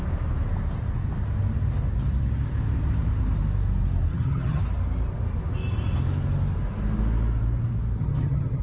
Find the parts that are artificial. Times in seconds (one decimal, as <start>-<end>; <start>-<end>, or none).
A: 4.1-4.6; 8.0-8.6